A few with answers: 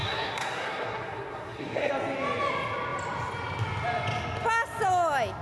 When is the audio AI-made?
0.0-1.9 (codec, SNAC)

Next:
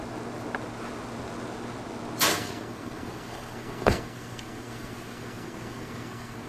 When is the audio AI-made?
2.3-6.5 (codec, SNAC)

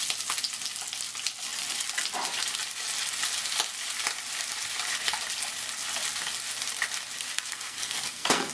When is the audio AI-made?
7.3-8.5 (codec, SNAC)

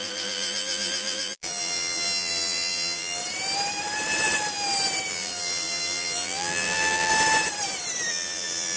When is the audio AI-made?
0.0-3.2 (vocoder, BigVGAN v2); 5.1-7.1; 8.1-8.8

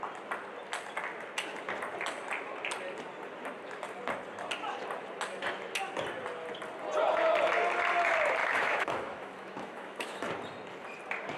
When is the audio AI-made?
8.4-10.3 (autoencoder, DAC-VAE)